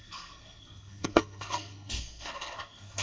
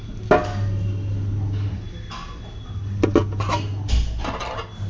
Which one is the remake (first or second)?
first